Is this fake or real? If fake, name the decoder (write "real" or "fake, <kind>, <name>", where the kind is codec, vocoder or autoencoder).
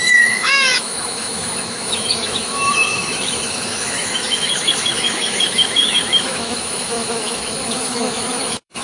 fake, autoencoder, DAC-VAE